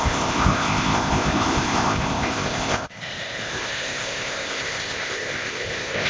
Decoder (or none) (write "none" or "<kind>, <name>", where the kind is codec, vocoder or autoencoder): codec, ZipCodec